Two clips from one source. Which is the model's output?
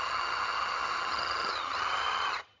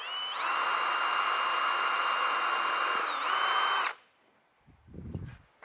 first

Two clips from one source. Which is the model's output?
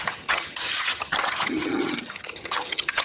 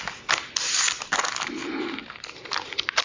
first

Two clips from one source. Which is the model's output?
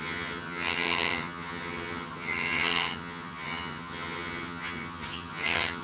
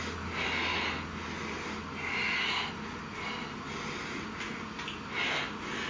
first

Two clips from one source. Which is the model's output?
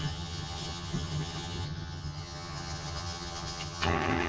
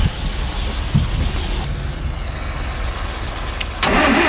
first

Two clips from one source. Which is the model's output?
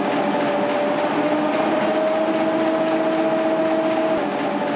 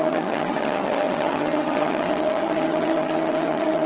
second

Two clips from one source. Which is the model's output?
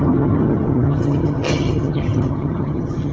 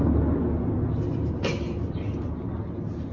first